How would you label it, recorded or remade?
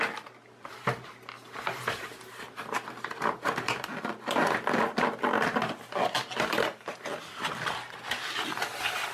recorded